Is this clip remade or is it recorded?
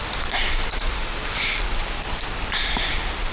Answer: recorded